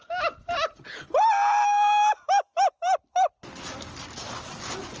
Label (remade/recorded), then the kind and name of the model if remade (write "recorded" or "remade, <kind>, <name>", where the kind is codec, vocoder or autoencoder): recorded